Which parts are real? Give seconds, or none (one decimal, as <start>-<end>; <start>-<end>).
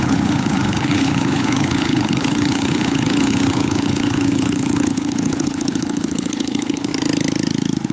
6.9-7.9